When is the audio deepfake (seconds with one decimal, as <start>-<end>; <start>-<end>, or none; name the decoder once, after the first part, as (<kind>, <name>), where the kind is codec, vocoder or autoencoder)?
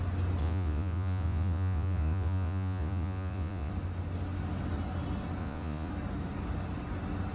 0.4-3.7 (vocoder, Vocos); 5.4-5.9